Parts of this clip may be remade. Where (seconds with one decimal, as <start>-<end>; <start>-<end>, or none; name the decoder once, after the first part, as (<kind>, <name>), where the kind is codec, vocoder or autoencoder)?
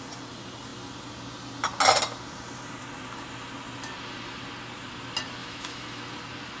5.4-6.0 (autoencoder, DAC-VAE)